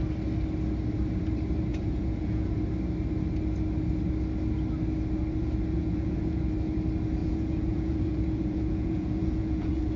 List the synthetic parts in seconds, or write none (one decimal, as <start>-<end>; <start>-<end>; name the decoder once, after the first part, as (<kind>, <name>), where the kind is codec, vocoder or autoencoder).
1.7-2.6 (vocoder, Vocos); 5.4-6.4; 7.2-10.0